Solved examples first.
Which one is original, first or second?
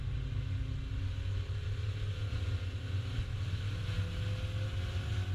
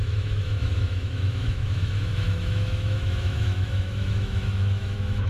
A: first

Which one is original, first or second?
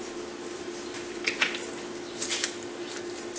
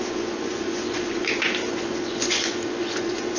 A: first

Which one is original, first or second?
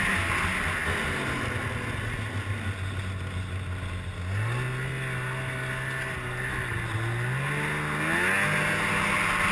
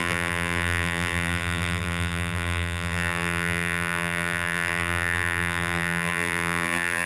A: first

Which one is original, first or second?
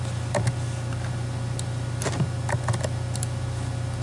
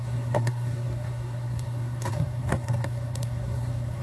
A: first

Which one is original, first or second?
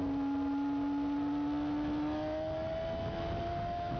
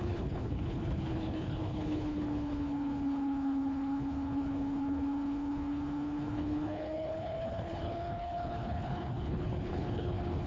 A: first